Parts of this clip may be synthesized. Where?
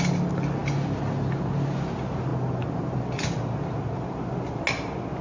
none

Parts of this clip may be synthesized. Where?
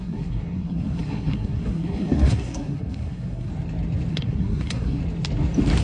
0.0-3.5 (codec, SNAC); 4.1-5.0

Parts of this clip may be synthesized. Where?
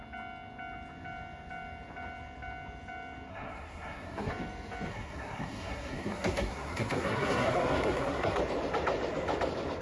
3.3-4.3 (codec, SNAC); 4.9-8.4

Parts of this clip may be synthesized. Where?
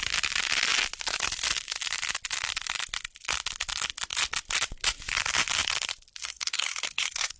6.2-7.4 (codec, SNAC)